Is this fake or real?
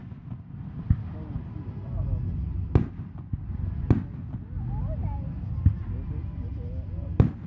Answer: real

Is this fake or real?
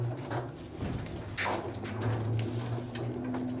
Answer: real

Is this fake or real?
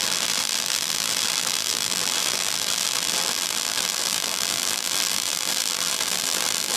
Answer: fake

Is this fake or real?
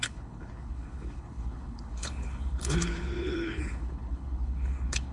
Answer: fake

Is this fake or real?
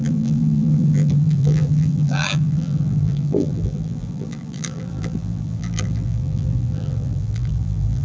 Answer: fake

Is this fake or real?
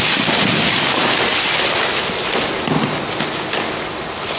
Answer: real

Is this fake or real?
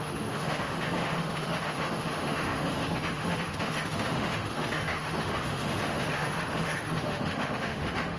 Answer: fake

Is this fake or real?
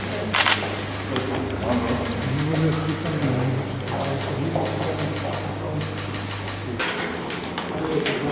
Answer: real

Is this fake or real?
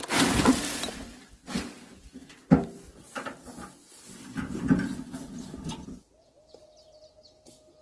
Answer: real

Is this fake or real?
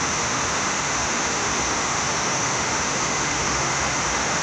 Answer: fake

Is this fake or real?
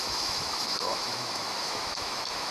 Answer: fake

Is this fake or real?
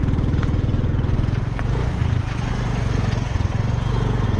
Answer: fake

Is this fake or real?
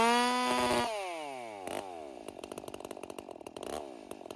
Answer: real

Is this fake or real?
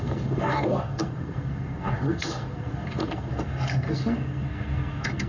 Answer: fake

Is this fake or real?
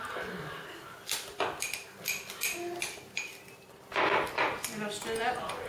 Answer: real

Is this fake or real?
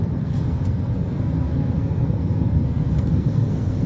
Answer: fake